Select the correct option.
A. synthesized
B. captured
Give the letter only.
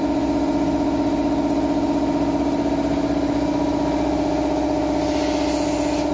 B